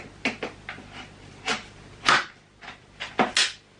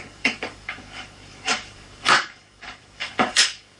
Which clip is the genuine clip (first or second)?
first